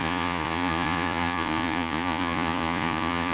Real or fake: fake